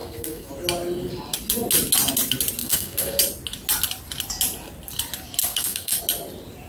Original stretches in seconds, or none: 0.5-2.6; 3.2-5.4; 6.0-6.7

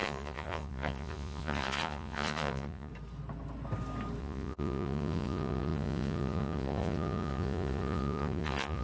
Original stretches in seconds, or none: 2.9-4.2